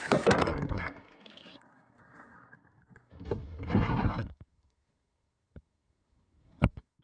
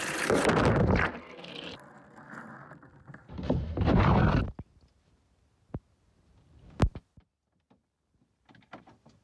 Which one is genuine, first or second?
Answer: second